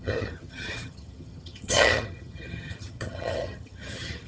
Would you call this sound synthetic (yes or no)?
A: yes